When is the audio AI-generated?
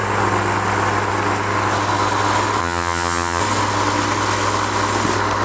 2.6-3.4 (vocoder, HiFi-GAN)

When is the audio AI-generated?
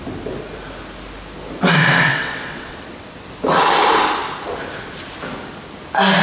2.1-3.3 (vocoder, WaveNeXt)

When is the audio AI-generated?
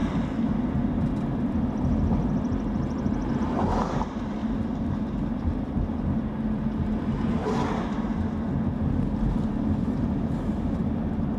4.4-5.0 (vocoder, BigVGAN v2)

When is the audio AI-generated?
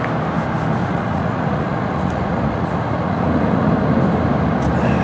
0.8-3.7 (vocoder, Vocos)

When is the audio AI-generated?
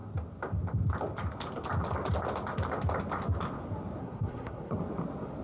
4.0-4.8 (codec, SNAC)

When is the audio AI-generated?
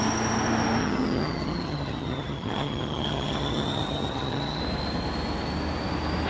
0.8-4.6 (vocoder, HiFi-GAN)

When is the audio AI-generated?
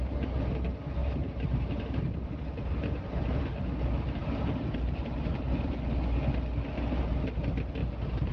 1.0-3.4 (vocoder, BigVGAN v2); 4.2-5.3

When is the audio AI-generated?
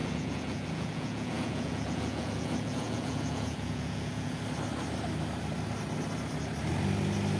0.0-4.4 (vocoder, Vocos)